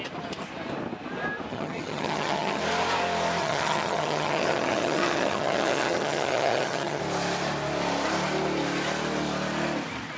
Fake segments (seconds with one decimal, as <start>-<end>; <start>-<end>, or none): 1.5-2.6; 3.4-7.0